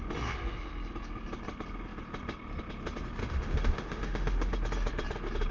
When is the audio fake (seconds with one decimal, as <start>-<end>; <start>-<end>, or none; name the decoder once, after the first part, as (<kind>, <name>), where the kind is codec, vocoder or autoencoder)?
3.2-4.5 (autoencoder, DAC-VAE)